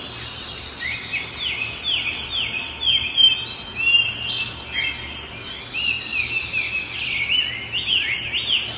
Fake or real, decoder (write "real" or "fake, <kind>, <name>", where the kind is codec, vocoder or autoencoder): real